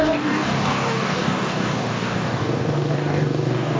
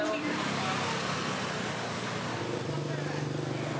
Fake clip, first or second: first